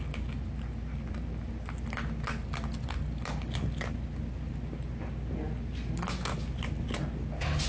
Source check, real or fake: real